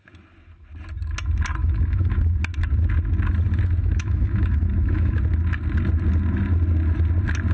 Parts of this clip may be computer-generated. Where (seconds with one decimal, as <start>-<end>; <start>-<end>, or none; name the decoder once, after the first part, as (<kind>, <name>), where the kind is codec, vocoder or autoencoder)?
1.6-2.2 (autoencoder, DAC-VAE); 3.8-5.2